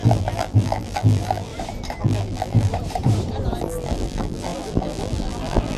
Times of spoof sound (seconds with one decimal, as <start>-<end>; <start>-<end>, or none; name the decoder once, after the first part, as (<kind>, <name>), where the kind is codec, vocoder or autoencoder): 0.0-1.5 (vocoder, BigVGAN v2); 2.0-2.7; 3.6-5.8